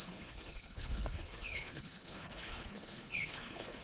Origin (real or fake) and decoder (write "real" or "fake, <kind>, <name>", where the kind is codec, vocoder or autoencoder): fake, codec, HILCodec